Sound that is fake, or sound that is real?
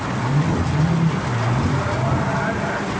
real